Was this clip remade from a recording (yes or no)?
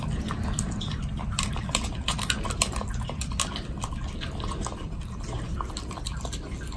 no